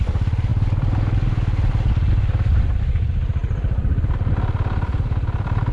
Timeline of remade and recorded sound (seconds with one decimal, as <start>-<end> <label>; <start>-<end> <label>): 0.0-0.5 remade; 0.5-2.1 recorded; 2.1-5.7 remade